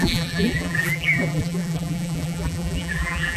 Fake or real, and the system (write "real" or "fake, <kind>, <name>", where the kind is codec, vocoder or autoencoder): fake, vocoder, BigVGAN v2